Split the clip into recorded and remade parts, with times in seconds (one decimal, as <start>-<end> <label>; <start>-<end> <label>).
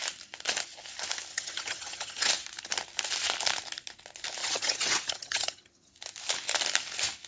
0.0-1.3 recorded; 1.3-2.3 remade; 2.3-4.4 recorded; 4.4-5.9 remade; 5.9-7.3 recorded